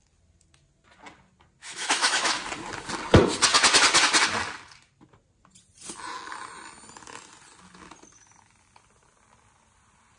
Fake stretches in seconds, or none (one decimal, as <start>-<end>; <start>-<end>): 1.6-2.3